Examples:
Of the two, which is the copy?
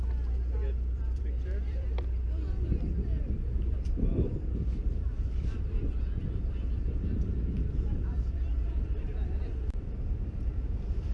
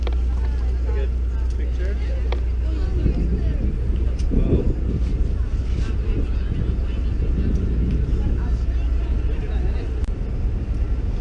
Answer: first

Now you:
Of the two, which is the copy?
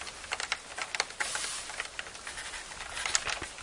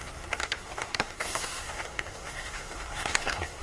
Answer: second